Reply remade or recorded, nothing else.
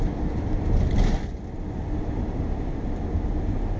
recorded